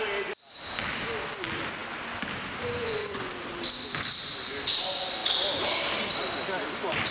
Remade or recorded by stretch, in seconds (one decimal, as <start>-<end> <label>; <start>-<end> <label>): 0.0-2.8 recorded; 2.8-3.3 remade; 3.3-7.1 recorded